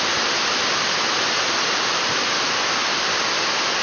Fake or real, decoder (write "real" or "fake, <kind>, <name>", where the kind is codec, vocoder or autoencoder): real